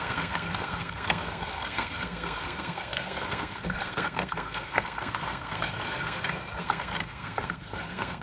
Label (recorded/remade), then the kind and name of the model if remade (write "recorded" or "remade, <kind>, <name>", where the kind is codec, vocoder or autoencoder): remade, codec, SNAC